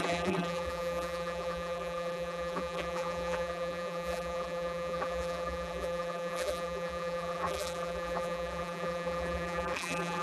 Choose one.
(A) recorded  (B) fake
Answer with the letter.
B